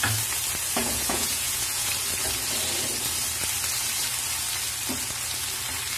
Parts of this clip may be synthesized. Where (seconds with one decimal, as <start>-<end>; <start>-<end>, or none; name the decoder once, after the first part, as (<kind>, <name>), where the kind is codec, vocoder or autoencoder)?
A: 0.8-1.9 (vocoder, Vocos)